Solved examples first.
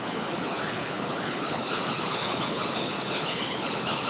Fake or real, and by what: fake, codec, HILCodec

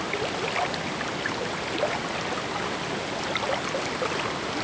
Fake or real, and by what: real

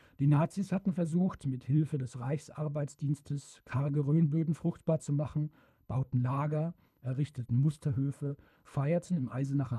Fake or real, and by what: fake, codec, HILCodec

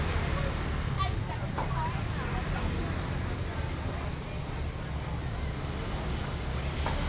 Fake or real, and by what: real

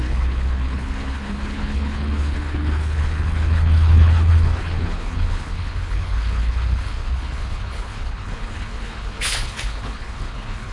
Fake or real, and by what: fake, codec, HILCodec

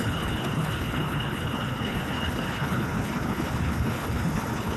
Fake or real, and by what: fake, codec, HILCodec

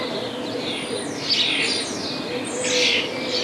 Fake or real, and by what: real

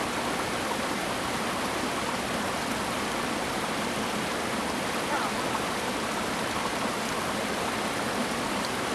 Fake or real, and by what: real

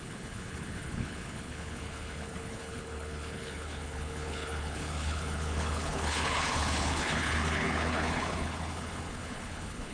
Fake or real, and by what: fake, codec, HILCodec